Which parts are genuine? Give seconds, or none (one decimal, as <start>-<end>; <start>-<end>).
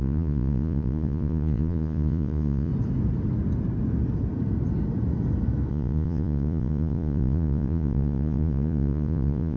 2.7-5.7